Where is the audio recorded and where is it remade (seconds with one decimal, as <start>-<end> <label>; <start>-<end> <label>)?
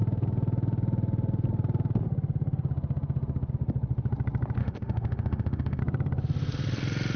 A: 0.0-4.6 recorded; 4.6-5.8 remade; 5.8-7.2 recorded